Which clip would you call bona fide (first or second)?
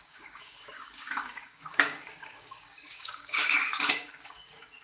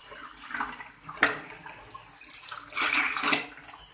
second